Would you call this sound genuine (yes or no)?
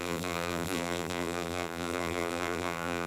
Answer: no